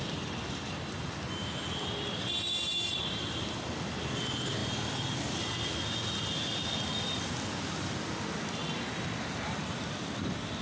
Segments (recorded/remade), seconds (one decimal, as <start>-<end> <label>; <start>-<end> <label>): 0.0-10.6 recorded